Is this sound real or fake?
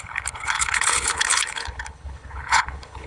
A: fake